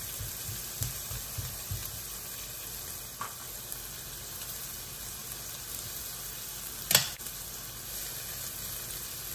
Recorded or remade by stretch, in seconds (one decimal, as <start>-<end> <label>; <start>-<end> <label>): 0.0-9.3 recorded